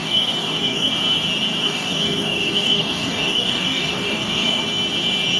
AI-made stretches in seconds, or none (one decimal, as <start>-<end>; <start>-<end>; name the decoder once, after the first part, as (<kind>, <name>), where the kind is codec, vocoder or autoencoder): 0.0-0.9 (codec, DAC); 1.6-4.6